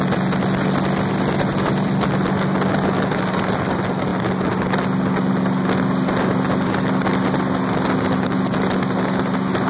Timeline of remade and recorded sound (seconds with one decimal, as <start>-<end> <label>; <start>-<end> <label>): 0.0-9.7 recorded